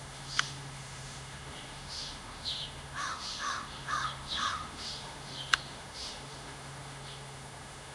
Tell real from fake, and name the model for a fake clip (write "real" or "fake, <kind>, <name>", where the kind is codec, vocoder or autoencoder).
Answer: fake, autoencoder, DAC-VAE